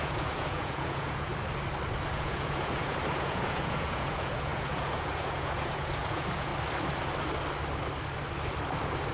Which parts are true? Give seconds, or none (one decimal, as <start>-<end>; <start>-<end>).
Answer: 1.3-2.1; 6.5-9.1